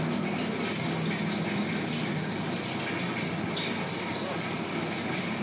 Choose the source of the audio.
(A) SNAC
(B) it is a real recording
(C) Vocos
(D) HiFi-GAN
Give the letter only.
B